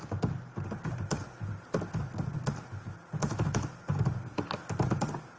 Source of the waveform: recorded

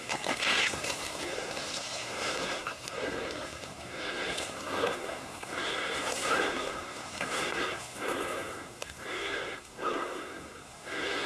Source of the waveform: remade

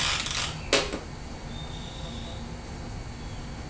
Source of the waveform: recorded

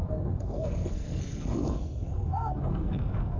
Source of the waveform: remade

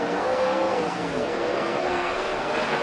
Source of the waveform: remade